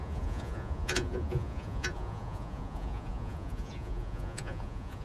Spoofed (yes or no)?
yes